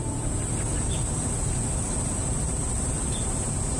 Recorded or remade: remade